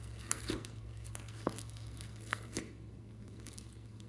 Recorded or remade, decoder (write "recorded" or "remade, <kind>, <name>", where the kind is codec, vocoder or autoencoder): remade, codec, SNAC